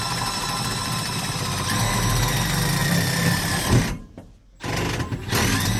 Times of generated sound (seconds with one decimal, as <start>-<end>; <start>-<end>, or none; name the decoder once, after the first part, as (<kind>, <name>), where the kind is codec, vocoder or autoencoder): 2.8-4.0 (vocoder, BigVGAN v2)